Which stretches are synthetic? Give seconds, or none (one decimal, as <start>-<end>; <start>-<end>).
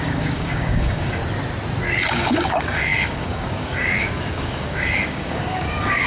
0.0-1.2; 2.1-6.1